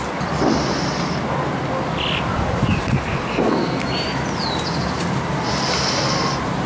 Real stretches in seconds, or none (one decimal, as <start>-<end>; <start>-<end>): 0.0-3.3; 3.8-6.7